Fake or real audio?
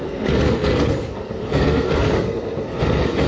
fake